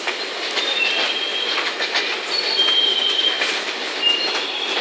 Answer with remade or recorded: recorded